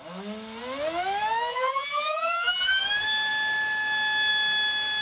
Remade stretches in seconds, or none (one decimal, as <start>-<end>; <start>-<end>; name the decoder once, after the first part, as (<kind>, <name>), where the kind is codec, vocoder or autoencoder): 1.5-2.8 (vocoder, BigVGAN v2)